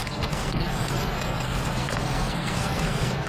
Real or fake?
fake